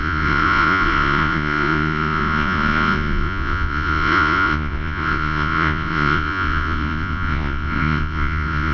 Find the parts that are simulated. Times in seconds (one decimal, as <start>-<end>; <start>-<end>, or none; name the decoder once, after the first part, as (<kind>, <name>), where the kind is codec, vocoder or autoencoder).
0.0-8.7 (vocoder, Vocos)